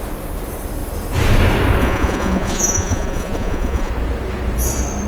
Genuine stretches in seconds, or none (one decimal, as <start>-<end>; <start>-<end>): 0.0-1.8; 3.9-5.1